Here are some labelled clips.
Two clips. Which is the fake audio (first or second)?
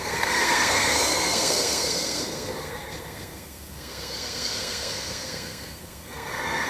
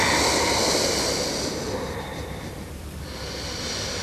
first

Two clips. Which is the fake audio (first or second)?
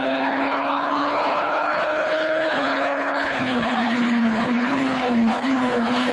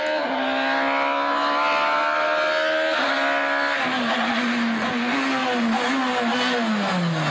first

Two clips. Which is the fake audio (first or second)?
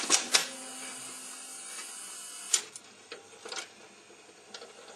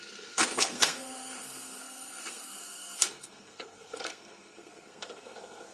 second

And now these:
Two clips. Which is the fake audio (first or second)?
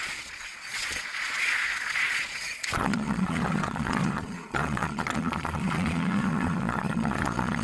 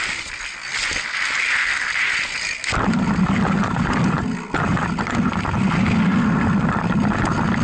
first